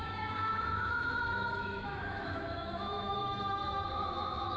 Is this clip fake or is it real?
fake